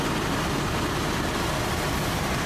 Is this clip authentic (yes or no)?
yes